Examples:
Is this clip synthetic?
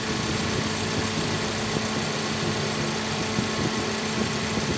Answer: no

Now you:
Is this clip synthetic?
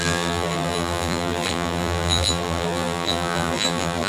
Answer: yes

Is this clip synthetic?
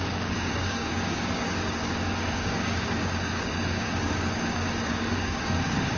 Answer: yes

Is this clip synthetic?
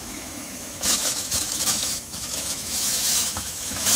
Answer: yes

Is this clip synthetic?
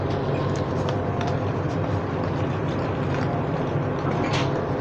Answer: no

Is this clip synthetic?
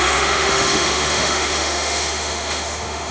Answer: yes